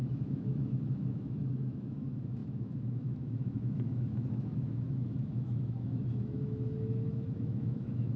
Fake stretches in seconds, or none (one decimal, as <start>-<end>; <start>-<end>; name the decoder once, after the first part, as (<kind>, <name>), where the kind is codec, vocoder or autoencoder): 0.0-8.2 (autoencoder, DAC-VAE)